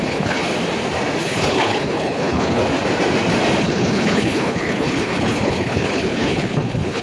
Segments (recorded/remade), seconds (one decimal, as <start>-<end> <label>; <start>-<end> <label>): 0.0-0.4 remade; 0.4-1.2 recorded; 1.2-2.6 remade; 2.6-3.6 recorded; 3.6-7.0 remade